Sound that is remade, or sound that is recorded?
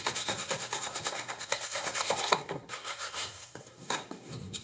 remade